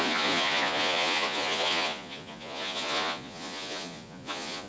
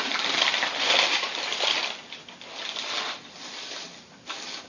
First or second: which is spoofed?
first